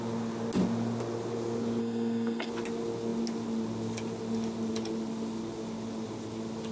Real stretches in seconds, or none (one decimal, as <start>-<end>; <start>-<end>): 0.0-1.8; 2.5-6.7